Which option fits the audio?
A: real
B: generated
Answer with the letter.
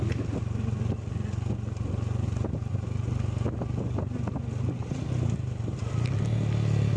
A